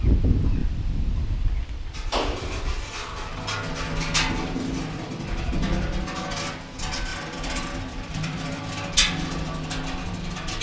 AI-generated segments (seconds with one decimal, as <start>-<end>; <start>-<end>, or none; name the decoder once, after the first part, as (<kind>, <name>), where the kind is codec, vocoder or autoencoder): 0.6-3.4 (vocoder, BigVGAN v2); 7.1-8.7

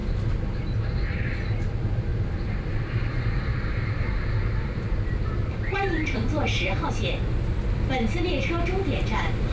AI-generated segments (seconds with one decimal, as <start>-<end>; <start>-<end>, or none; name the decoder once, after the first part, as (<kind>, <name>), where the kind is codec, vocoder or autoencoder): 2.1-6.9 (vocoder, BigVGAN v2)

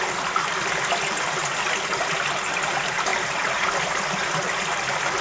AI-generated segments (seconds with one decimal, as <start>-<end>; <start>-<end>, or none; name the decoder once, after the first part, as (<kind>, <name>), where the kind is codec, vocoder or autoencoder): none